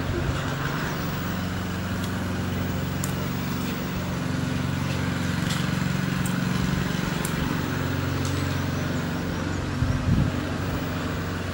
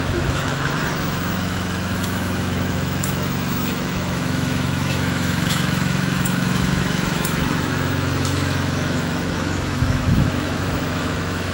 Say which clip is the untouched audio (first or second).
first